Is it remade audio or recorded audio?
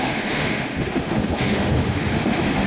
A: remade